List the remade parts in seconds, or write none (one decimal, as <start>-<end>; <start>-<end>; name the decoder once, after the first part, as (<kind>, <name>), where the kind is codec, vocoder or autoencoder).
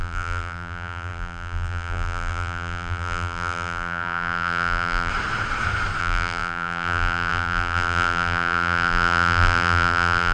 0.0-5.1 (vocoder, BigVGAN v2); 6.0-10.3